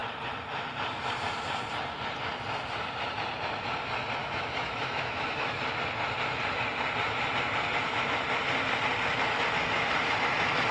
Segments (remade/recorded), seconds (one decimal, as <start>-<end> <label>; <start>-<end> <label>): 0.0-4.2 recorded; 4.2-5.6 remade; 5.6-10.7 recorded